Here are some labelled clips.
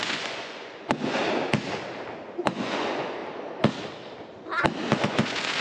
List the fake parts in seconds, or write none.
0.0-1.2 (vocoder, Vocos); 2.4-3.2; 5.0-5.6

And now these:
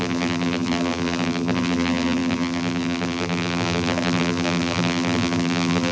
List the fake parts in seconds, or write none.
0.0-5.9 (vocoder, BigVGAN v2)

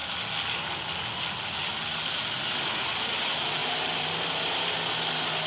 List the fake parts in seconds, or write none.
3.6-5.1 (vocoder, BigVGAN v2)

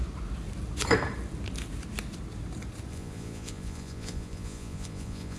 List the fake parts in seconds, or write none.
2.9-5.4 (vocoder, Vocos)

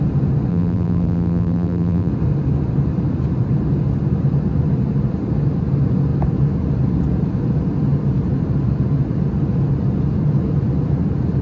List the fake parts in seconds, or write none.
0.5-2.1 (vocoder, BigVGAN v2)